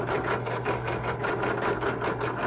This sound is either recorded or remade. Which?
recorded